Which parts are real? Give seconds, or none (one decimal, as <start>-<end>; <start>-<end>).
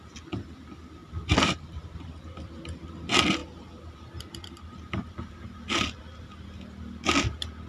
0.0-1.0; 2.6-7.7